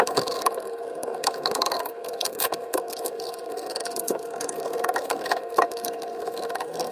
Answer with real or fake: fake